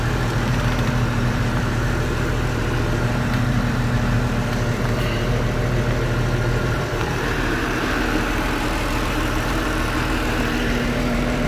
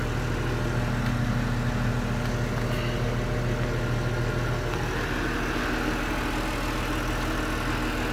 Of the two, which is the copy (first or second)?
first